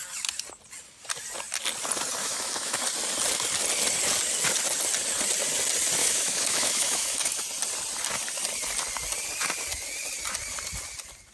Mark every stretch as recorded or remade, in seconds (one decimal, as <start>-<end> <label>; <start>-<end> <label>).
0.0-2.2 recorded; 2.2-2.8 remade; 2.8-6.0 recorded; 6.0-7.4 remade; 7.4-11.3 recorded